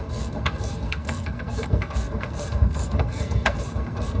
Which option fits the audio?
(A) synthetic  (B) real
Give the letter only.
A